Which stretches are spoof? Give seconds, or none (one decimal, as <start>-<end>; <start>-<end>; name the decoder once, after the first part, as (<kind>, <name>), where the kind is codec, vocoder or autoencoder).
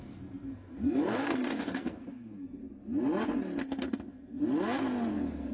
0.0-2.6 (codec, SNAC); 3.6-4.4; 5.1-5.5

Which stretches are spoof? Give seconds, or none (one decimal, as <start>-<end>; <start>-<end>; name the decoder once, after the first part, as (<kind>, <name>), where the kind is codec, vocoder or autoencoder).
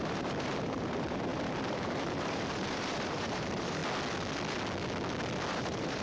0.0-3.8 (vocoder, BigVGAN v2); 5.5-6.0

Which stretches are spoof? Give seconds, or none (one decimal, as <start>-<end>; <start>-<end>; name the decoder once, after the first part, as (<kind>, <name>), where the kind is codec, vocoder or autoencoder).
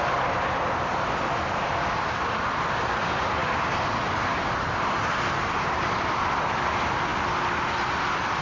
none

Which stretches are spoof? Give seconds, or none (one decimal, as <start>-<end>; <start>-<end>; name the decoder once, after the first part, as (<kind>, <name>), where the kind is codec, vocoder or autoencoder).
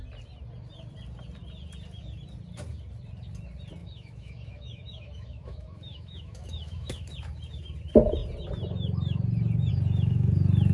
3.8-7.1 (autoencoder, DAC-VAE)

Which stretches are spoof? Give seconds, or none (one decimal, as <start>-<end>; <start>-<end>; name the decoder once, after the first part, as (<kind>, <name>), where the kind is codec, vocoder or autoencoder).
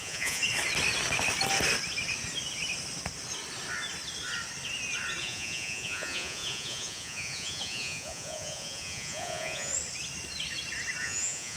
0.0-0.4 (vocoder, Vocos); 5.2-9.7; 11.0-11.6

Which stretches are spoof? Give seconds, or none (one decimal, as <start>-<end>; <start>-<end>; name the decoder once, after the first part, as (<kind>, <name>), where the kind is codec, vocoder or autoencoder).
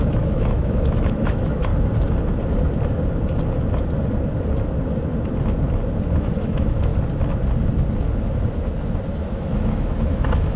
0.0-1.7 (autoencoder, DAC-VAE); 6.2-6.9; 9.2-10.6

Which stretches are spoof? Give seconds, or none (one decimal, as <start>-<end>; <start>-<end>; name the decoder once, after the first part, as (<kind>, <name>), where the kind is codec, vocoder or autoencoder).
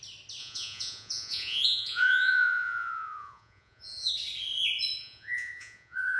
0.4-4.1 (vocoder, Vocos); 5.0-6.2